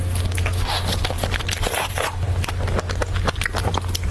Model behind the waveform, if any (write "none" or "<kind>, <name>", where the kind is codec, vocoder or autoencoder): none